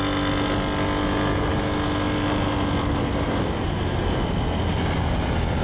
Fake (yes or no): no